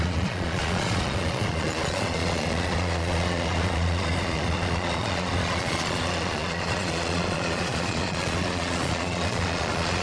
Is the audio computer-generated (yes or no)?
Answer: yes